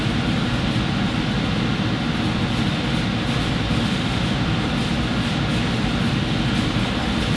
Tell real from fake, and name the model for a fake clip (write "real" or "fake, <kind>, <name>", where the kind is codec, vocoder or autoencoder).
real